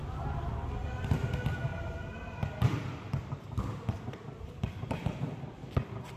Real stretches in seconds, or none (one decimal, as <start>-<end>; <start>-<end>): 0.0-1.7; 5.1-6.2